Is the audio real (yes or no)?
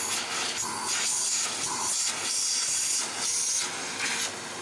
yes